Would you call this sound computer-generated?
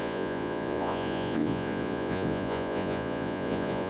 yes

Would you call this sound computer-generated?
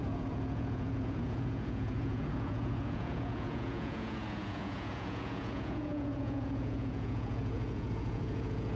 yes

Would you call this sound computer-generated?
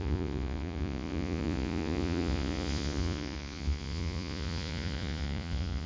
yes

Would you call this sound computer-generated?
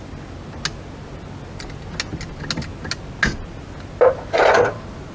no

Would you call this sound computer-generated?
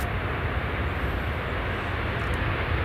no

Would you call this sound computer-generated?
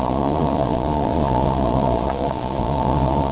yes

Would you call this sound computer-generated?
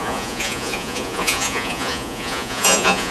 yes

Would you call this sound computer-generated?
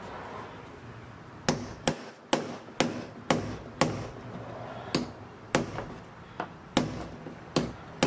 no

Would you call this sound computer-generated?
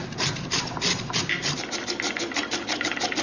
no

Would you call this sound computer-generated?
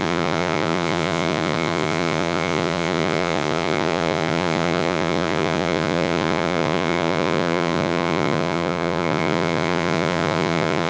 yes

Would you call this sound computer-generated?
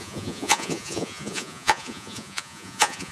yes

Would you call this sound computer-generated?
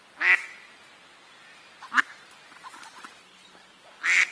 no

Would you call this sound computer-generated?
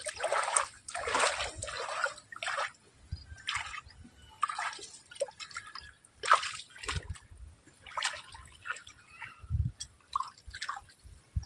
no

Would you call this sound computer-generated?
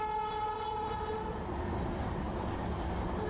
no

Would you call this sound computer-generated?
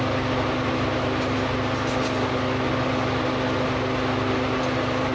no